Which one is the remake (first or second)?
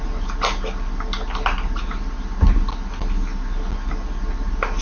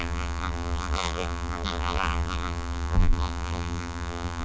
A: second